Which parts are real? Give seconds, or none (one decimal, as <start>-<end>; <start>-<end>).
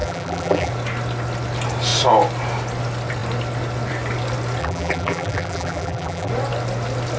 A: 0.7-4.6; 6.3-7.2